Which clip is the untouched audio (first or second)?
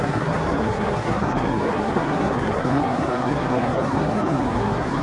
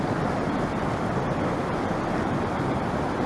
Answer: second